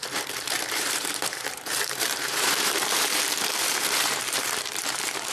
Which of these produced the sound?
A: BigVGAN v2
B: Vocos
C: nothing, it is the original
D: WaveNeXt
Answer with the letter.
A